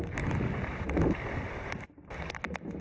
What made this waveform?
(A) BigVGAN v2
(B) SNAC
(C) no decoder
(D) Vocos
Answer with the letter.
C